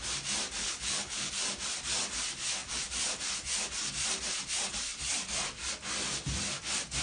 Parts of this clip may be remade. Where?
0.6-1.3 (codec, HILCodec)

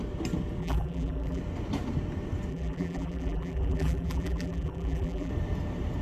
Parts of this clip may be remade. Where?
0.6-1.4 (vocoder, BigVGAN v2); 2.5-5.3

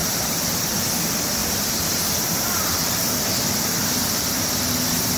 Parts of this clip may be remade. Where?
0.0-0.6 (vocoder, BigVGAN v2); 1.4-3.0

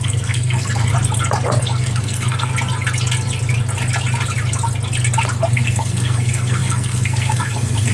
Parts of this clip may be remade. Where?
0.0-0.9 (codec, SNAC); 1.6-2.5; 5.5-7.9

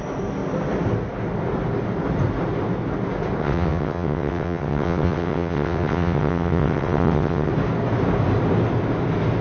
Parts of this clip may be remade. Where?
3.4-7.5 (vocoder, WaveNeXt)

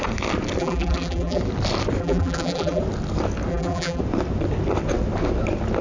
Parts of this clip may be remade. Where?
0.6-1.4 (vocoder, BigVGAN v2); 2.0-2.8; 3.5-4.0

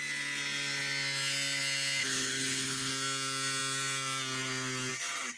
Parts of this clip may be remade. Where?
2.0-2.9 (codec, HILCodec)